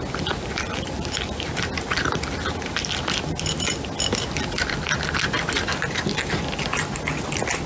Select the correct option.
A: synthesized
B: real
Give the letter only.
B